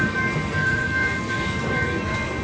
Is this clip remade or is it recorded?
remade